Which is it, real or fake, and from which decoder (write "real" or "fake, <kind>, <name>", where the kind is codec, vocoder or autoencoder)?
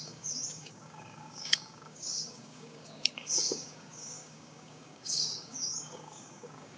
fake, codec, DAC